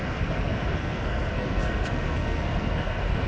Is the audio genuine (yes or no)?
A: no